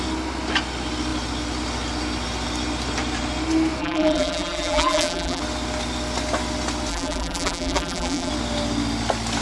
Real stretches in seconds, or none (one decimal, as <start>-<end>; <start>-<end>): 0.0-3.8; 5.4-6.9; 8.3-9.4